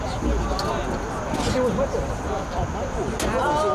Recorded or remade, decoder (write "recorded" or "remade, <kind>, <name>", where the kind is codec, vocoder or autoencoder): recorded